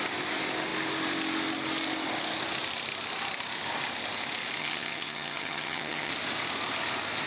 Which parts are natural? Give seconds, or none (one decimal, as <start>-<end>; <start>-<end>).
0.0-4.6; 6.1-7.3